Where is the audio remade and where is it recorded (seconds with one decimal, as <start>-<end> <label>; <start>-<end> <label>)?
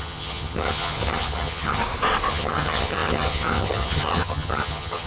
0.0-1.8 remade; 1.8-2.3 recorded; 2.3-5.1 remade